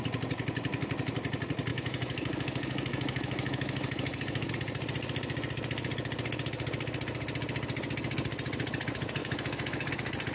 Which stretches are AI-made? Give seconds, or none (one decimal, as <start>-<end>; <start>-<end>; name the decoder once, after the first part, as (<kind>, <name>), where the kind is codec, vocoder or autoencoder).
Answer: 1.7-4.5 (autoencoder, DAC-VAE); 9.2-9.9